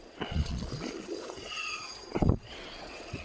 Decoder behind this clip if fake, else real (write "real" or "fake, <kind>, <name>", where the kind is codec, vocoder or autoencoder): fake, vocoder, Vocos